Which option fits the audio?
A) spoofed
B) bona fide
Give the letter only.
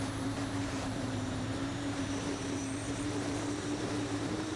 A